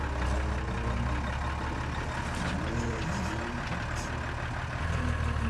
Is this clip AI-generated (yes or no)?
no